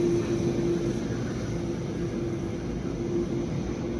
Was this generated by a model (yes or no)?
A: no